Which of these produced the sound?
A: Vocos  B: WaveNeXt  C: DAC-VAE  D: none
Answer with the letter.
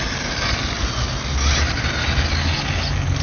D